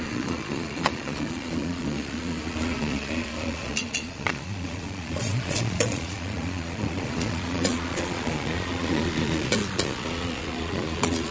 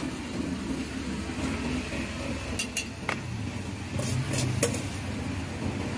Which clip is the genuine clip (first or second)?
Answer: second